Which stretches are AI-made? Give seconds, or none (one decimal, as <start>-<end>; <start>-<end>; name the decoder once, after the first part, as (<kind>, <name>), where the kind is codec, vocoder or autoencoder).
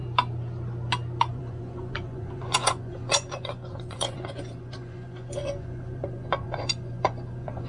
1.3-7.7 (vocoder, Vocos)